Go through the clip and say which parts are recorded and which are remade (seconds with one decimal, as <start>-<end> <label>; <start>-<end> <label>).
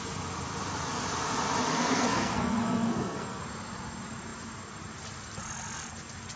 0.0-1.7 recorded; 1.7-3.4 remade; 3.4-6.4 recorded